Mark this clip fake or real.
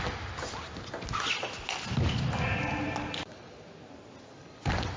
real